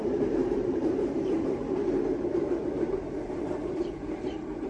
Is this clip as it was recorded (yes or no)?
no